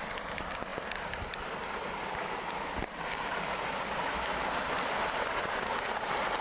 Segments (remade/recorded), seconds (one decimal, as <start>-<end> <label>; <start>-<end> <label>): 0.0-6.4 recorded